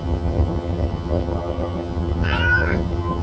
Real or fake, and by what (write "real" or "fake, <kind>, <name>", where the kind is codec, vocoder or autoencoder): fake, vocoder, HiFi-GAN